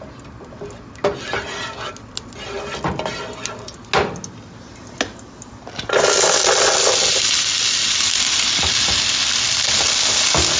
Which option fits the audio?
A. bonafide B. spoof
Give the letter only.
A